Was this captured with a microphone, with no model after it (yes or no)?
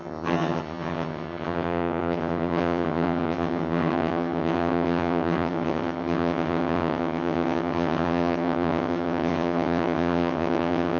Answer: no